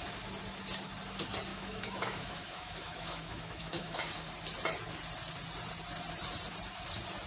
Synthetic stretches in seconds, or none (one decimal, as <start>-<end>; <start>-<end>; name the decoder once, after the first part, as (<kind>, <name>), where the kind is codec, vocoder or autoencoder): 1.5-4.0 (autoencoder, DAC-VAE)